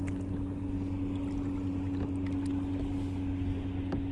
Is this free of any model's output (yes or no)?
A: yes